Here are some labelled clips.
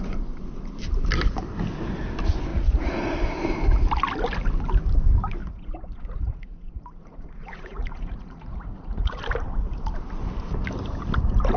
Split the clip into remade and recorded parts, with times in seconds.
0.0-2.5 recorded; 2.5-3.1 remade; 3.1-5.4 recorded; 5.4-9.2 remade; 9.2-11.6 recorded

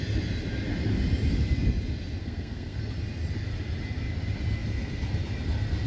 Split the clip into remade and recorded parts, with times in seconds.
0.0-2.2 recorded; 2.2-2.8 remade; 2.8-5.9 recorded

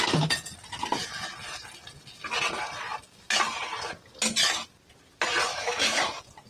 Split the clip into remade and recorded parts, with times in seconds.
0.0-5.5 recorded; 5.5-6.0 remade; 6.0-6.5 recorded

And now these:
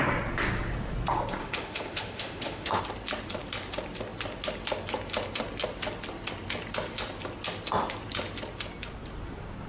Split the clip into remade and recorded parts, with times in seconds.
0.0-1.4 recorded; 1.4-2.8 remade; 2.8-9.7 recorded

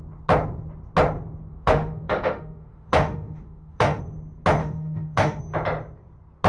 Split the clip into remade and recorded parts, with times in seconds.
0.0-1.5 recorded; 1.5-4.0 remade; 4.0-4.6 recorded; 4.6-5.4 remade; 5.4-6.5 recorded

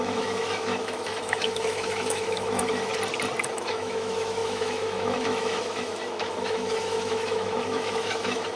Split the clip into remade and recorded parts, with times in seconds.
0.0-2.9 remade; 2.9-3.5 recorded; 3.5-8.6 remade

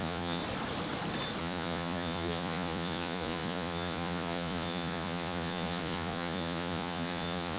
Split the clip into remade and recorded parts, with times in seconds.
0.0-0.4 remade; 0.4-1.4 recorded; 1.4-7.6 remade

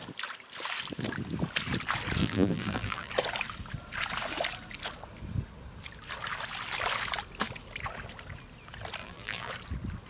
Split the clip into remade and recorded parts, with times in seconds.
0.0-2.2 recorded; 2.2-3.1 remade; 3.1-9.0 recorded; 9.0-9.5 remade; 9.5-10.1 recorded